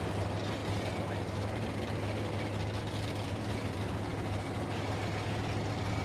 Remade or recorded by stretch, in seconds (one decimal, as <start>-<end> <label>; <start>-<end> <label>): 0.0-6.0 recorded